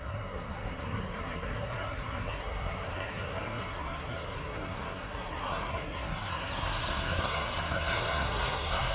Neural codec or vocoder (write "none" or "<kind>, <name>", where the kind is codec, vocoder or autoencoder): codec, SNAC